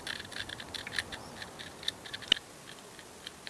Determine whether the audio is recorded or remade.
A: recorded